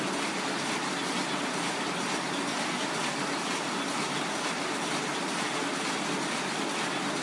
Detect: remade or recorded recorded